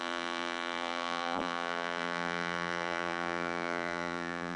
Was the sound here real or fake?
fake